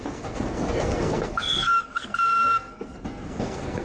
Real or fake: fake